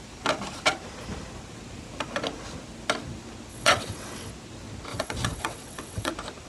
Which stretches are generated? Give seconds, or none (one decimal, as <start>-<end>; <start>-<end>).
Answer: 3.5-4.3; 4.9-6.1